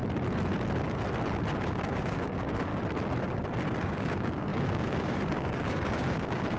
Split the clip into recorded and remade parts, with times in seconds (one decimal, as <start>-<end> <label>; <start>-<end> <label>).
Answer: 0.0-1.6 recorded; 1.6-2.7 remade; 2.7-3.8 recorded; 3.8-6.6 remade